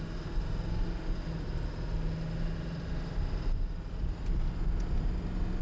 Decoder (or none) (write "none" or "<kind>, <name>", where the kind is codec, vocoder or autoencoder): none